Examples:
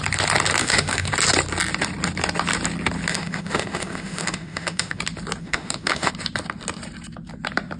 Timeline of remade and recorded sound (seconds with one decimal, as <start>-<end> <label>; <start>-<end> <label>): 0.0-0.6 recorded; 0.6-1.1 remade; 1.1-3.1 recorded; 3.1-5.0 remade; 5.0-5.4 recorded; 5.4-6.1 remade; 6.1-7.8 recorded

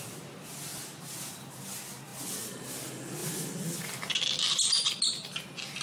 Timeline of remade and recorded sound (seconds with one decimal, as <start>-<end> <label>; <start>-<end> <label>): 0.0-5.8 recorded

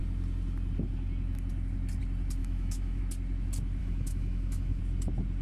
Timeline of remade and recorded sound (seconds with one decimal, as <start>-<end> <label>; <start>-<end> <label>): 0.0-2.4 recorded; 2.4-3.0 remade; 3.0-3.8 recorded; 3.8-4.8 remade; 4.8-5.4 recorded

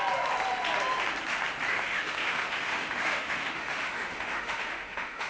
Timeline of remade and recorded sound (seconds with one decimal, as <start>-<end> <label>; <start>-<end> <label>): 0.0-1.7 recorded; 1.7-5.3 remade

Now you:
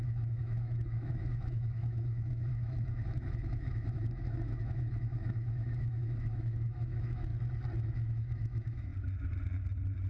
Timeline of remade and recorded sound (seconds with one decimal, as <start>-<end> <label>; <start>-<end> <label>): 0.0-7.3 remade; 7.3-7.9 recorded; 7.9-8.9 remade; 8.9-10.1 recorded